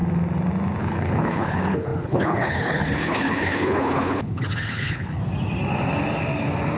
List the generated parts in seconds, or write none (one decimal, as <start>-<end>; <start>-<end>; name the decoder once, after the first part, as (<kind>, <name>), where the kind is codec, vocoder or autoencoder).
0.8-5.2 (codec, HILCodec)